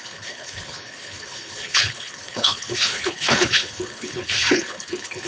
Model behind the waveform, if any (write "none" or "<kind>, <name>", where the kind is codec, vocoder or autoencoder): codec, HILCodec